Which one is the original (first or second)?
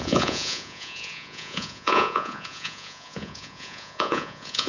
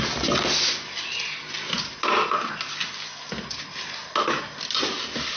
second